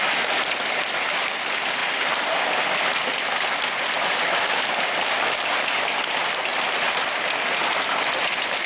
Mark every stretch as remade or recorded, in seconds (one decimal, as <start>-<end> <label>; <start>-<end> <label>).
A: 0.0-8.7 recorded